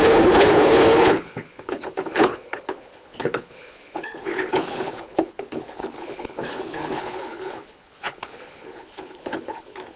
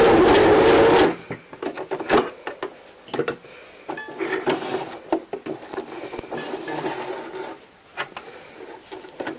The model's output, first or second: first